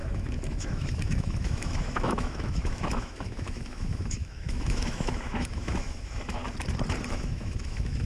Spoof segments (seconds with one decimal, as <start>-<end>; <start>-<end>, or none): 0.0-6.4; 7.1-8.1